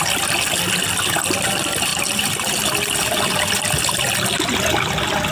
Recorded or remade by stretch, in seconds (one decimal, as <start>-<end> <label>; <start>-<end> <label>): 0.0-1.9 recorded; 1.9-3.2 remade; 3.2-5.3 recorded